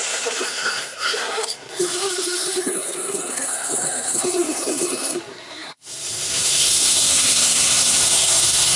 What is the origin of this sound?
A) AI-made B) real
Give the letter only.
A